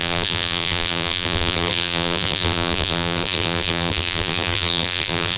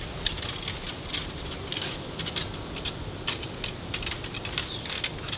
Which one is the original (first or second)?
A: second